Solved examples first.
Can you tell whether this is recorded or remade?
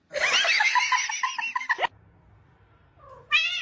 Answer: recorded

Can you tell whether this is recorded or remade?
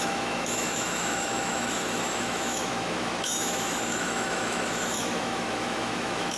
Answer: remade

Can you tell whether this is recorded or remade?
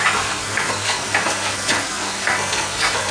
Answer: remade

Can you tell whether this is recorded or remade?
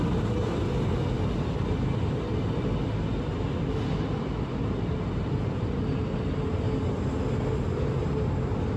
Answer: recorded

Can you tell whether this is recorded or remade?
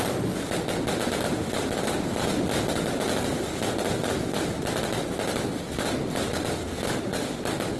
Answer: recorded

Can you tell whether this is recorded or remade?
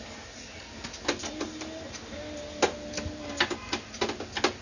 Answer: recorded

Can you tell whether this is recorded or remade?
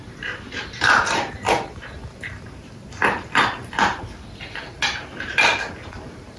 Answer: recorded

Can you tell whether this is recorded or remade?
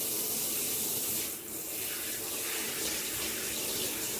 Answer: recorded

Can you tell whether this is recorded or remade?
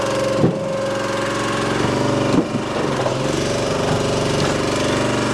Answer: recorded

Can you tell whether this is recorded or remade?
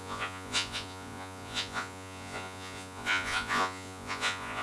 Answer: remade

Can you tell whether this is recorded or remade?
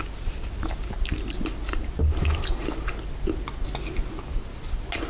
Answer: recorded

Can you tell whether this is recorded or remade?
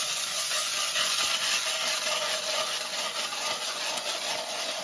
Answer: remade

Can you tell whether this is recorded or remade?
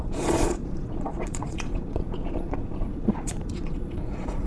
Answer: remade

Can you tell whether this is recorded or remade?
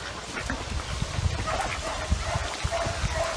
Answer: recorded